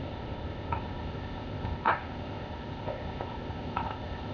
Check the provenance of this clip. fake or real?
fake